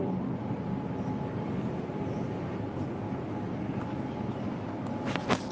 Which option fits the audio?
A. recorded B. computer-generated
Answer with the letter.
A